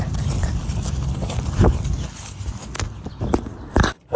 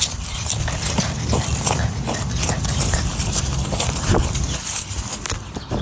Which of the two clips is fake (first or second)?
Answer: second